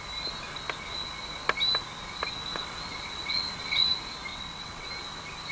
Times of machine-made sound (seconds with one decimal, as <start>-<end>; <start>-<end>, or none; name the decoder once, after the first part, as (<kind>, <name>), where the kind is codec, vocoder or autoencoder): 2.5-3.9 (vocoder, WaveNeXt); 4.3-4.9